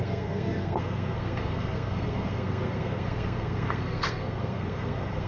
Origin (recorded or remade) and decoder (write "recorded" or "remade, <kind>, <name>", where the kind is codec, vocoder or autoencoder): remade, codec, SNAC